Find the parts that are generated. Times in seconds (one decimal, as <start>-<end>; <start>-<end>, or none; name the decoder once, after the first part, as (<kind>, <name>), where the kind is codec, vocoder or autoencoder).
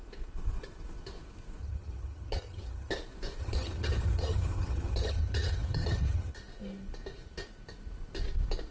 1.6-2.9 (vocoder, HiFi-GAN); 3.4-6.3